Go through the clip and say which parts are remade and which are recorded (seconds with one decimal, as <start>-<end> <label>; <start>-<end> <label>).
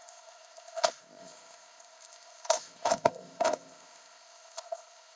0.0-5.2 remade